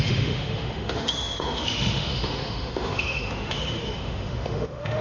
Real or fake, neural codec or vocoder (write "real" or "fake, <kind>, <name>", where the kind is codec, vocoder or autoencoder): fake, autoencoder, DAC-VAE